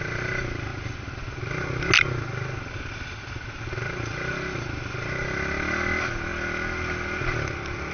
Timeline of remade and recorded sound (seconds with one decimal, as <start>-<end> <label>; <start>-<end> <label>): 0.0-7.9 recorded

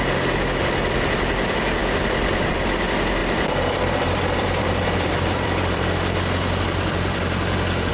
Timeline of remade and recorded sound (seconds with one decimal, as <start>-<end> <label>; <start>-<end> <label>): 0.0-3.2 recorded; 3.2-7.9 remade

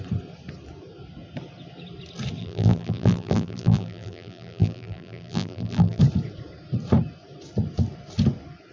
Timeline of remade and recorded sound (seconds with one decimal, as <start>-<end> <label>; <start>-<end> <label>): 0.0-2.4 recorded; 2.4-6.0 remade; 6.0-8.7 recorded

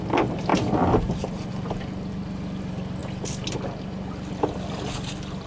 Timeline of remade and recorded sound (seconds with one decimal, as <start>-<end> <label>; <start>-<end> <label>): 0.0-5.5 recorded

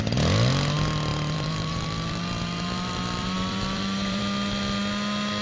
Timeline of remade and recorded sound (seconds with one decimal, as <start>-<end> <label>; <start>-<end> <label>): 0.0-1.1 recorded; 1.1-4.2 remade; 4.2-5.4 recorded

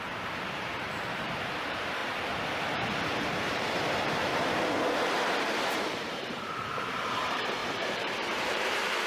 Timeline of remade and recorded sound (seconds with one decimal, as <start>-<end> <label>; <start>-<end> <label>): 0.0-2.0 remade; 2.0-3.2 recorded; 3.2-4.3 remade; 4.3-5.4 recorded; 5.4-9.1 remade

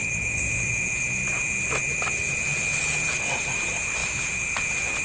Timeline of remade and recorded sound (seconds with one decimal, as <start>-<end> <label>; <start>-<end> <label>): 0.0-0.7 remade; 0.7-2.2 recorded; 2.2-2.8 remade; 2.8-4.0 recorded; 4.0-5.0 remade

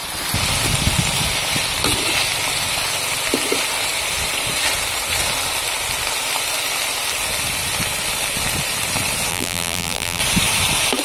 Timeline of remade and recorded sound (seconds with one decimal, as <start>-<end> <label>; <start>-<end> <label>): 0.0-9.3 recorded; 9.3-10.2 remade; 10.2-11.0 recorded